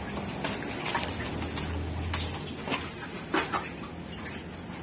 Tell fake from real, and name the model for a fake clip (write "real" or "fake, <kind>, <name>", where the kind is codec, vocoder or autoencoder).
real